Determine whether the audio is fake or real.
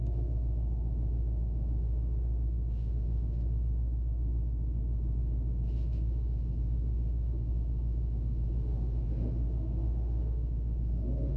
fake